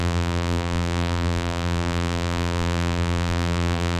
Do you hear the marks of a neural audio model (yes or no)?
yes